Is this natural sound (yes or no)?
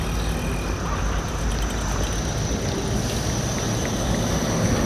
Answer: yes